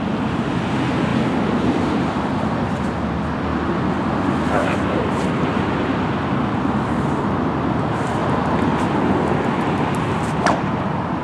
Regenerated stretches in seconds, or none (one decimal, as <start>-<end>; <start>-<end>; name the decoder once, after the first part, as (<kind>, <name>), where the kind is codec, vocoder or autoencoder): none